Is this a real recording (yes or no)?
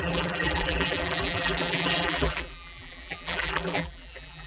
no